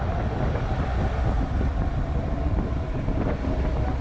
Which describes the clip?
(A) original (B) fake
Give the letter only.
A